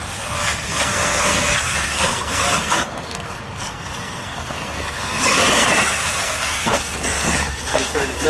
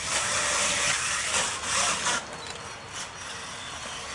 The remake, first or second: first